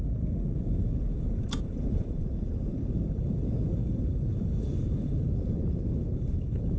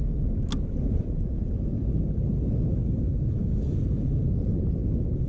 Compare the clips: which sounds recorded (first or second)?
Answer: second